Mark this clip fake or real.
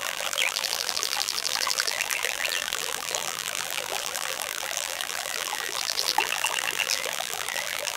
fake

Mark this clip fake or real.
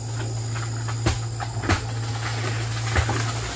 real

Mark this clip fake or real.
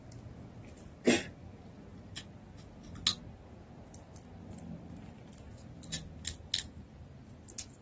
real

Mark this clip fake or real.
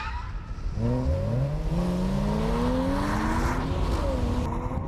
real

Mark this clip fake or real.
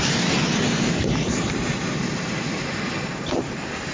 fake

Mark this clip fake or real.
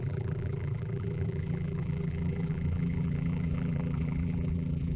fake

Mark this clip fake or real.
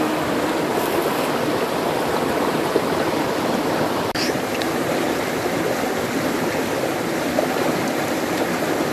fake